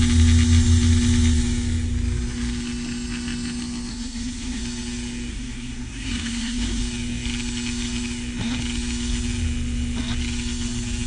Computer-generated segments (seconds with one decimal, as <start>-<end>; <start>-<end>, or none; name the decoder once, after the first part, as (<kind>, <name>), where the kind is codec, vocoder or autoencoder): 3.9-4.6 (codec, SNAC); 5.3-6.8

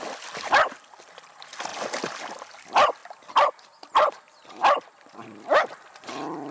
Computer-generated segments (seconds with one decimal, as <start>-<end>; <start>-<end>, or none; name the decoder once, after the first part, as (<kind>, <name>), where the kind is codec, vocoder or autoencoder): none

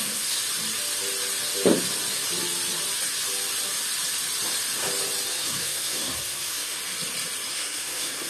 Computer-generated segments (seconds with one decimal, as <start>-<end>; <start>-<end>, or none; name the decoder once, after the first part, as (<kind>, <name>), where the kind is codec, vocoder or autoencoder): 0.0-0.4 (codec, SNAC); 5.3-6.8; 7.5-8.3

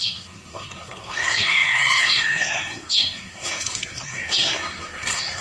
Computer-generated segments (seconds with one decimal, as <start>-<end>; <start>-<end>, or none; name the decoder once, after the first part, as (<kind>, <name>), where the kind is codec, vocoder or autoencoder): 0.0-5.4 (codec, SNAC)